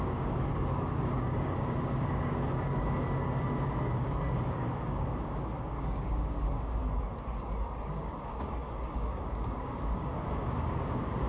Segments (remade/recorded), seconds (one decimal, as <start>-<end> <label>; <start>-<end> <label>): 0.0-6.8 remade; 6.8-7.8 recorded; 7.8-11.3 remade